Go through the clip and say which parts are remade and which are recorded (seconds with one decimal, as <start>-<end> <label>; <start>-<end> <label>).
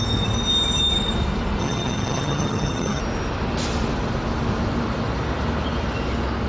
0.0-1.6 recorded; 1.6-3.0 remade; 3.0-6.5 recorded